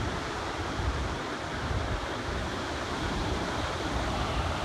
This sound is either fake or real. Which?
real